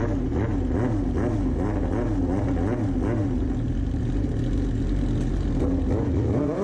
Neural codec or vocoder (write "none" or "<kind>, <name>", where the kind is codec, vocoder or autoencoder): none